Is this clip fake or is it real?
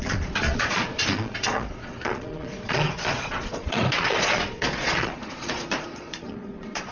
fake